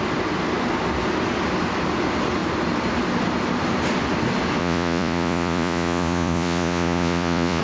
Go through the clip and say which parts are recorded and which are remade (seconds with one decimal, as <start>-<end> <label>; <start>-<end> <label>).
0.0-4.6 recorded; 4.6-7.6 remade